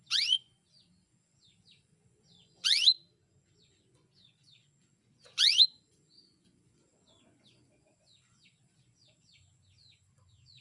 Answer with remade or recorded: remade